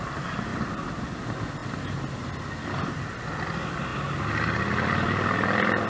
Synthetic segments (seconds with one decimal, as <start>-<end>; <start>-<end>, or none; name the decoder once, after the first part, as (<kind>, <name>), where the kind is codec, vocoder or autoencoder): 0.5-1.2 (vocoder, BigVGAN v2); 3.9-5.9